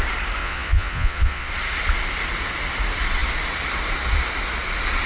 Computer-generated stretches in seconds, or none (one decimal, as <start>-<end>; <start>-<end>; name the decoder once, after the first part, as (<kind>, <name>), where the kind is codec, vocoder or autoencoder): 0.4-1.5 (vocoder, Vocos)